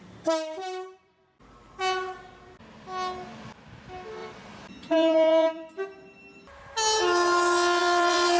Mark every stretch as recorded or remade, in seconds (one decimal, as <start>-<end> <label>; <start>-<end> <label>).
0.0-0.6 recorded; 0.6-1.4 remade; 1.4-4.2 recorded; 4.2-5.7 remade; 5.7-7.8 recorded; 7.8-8.4 remade